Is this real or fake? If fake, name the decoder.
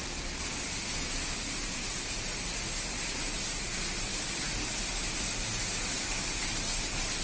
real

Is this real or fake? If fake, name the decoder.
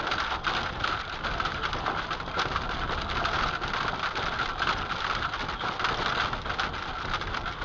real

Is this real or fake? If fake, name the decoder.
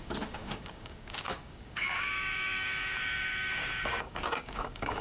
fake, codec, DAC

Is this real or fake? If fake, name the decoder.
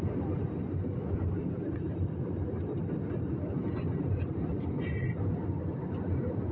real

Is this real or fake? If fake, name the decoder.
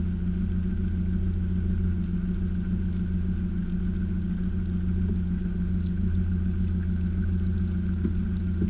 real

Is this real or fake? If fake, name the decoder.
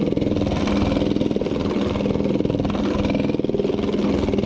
real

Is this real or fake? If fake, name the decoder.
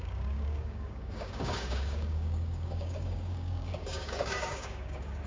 fake, codec, DAC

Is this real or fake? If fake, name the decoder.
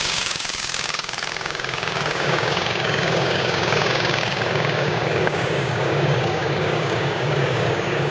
fake, codec, DAC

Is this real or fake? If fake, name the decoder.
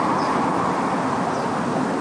real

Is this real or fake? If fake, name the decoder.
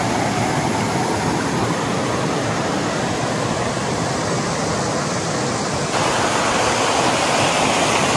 real